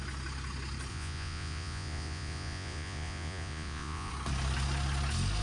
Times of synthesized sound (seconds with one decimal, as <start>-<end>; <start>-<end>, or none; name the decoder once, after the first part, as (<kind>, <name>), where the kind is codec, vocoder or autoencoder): 0.9-4.1 (vocoder, Vocos)